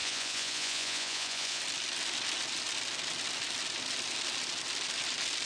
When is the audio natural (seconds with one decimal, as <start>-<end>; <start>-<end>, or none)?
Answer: 1.6-5.5